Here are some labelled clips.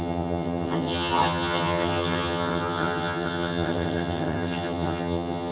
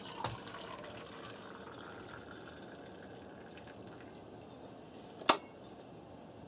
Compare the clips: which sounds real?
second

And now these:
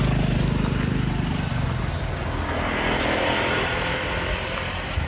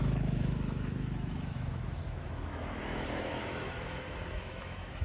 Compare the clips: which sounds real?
first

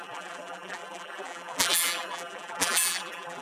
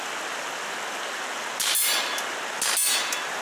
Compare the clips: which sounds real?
second